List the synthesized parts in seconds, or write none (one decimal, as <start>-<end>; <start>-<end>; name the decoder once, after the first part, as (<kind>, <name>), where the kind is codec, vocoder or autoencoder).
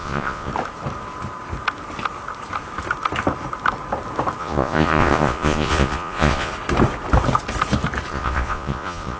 0.0-0.5 (vocoder, Vocos); 4.4-6.5; 8.1-9.2